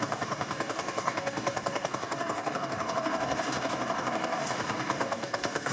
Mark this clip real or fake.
fake